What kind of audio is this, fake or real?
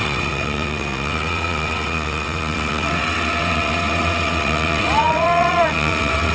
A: fake